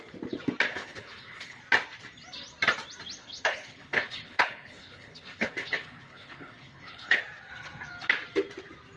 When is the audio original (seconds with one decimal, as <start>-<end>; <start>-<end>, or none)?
0.0-0.7; 1.6-3.2; 7.2-9.0